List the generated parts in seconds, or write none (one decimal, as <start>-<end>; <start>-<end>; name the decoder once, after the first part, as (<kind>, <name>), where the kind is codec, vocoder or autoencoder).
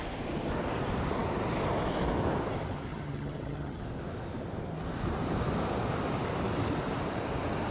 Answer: 2.9-3.8 (vocoder, HiFi-GAN)